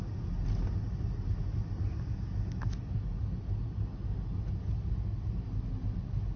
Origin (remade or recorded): recorded